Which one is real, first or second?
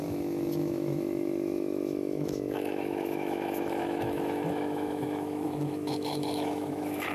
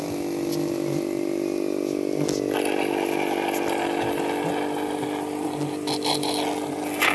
second